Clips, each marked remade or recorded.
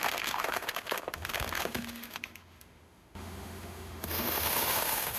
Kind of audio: remade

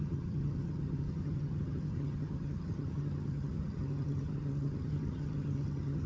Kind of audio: remade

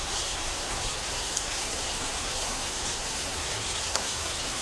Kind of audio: remade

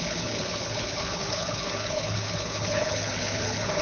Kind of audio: remade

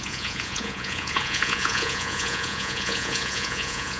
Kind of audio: remade